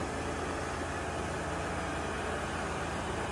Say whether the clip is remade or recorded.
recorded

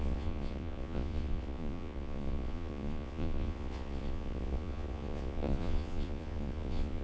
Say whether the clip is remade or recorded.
remade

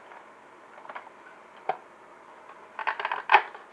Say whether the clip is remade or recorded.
recorded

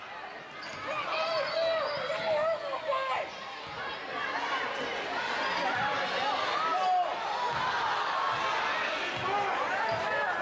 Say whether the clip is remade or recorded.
recorded